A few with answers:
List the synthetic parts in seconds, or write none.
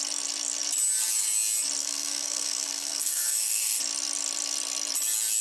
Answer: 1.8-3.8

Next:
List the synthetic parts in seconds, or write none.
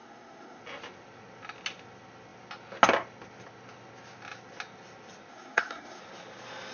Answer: 0.0-0.6; 5.3-6.0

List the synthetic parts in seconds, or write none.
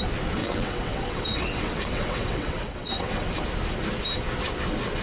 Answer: 0.4-3.4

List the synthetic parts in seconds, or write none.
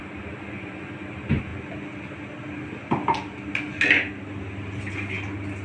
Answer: none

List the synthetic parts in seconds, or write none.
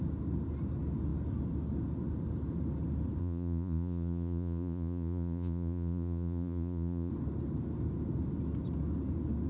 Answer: 3.2-7.1